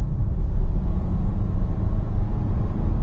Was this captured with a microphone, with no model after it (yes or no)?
no